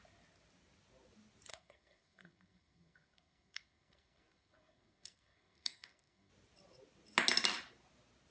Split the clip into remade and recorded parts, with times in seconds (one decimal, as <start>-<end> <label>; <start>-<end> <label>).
0.0-1.5 recorded; 1.5-6.3 remade; 6.3-8.3 recorded